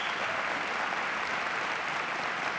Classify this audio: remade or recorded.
recorded